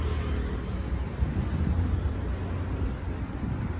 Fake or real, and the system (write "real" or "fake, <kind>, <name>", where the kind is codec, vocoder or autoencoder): real